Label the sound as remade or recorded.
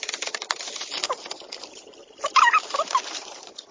remade